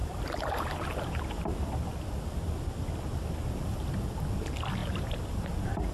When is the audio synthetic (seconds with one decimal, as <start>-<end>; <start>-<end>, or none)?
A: 4.8-5.9